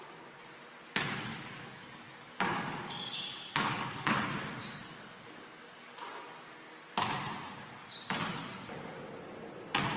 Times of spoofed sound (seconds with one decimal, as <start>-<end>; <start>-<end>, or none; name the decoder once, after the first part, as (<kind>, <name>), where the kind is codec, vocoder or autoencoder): 1.3-4.2 (codec, DAC); 4.8-6.0